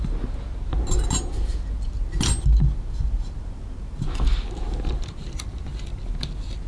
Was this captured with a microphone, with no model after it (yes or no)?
yes